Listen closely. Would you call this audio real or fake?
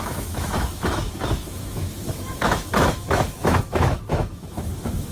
fake